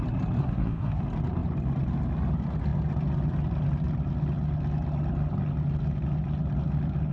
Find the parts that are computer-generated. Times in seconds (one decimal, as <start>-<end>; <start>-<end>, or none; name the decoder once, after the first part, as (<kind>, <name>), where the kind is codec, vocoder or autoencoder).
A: 0.4-1.0 (codec, SNAC)